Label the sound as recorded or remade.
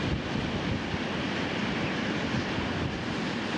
recorded